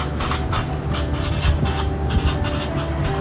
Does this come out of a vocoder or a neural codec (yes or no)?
no